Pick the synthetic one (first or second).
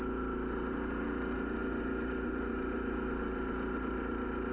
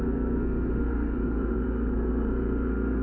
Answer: second